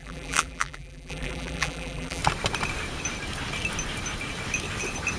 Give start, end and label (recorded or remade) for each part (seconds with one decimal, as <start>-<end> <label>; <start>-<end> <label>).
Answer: 0.0-2.2 remade; 2.2-5.2 recorded